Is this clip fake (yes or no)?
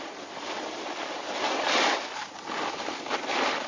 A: no